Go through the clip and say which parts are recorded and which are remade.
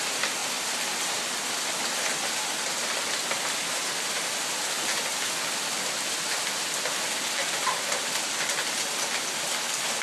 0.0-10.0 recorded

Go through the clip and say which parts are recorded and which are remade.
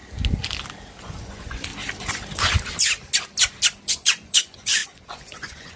0.0-1.0 recorded; 1.0-1.7 remade; 1.7-3.9 recorded; 3.9-5.8 remade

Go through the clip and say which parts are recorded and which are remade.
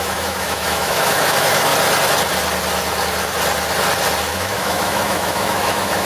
0.0-1.7 remade; 1.7-4.3 recorded; 4.3-6.1 remade